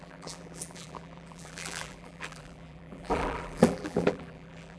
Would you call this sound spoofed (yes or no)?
yes